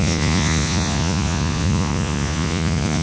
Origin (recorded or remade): remade